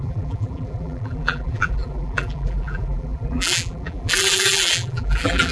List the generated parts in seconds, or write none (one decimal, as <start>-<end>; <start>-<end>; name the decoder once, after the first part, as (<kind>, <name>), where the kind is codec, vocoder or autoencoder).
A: 0.0-5.5 (vocoder, BigVGAN v2)